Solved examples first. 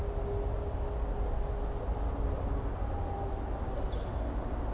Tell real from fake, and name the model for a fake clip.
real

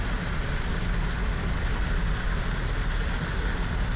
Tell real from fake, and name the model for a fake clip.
real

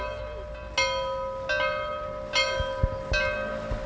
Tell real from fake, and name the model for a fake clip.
real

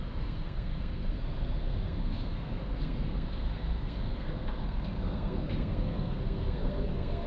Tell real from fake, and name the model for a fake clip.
fake, codec, SNAC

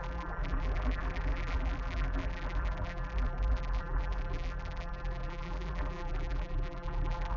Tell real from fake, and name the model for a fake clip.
fake, vocoder, BigVGAN v2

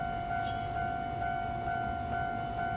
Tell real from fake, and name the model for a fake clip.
real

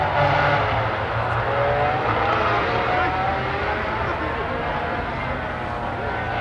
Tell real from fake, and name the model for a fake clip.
real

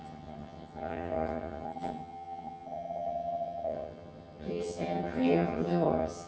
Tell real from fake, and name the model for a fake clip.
fake, vocoder, HiFi-GAN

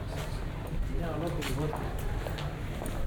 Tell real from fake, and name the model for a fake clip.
real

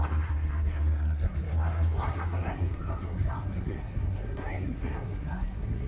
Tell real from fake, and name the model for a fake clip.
fake, codec, SNAC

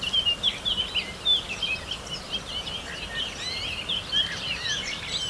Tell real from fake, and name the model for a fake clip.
real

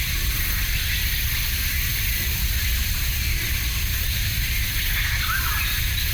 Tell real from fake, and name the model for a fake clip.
real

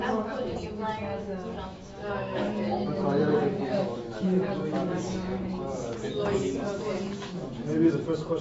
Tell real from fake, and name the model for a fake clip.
fake, autoencoder, DAC-VAE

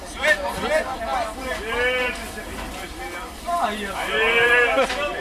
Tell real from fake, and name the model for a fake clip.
real